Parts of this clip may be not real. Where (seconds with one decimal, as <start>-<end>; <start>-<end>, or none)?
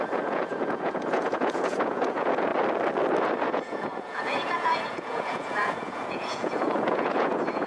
0.0-2.5; 3.4-7.7